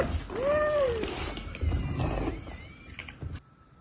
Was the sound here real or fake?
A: fake